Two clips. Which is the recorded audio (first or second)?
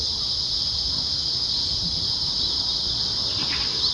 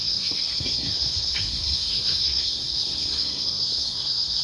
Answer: first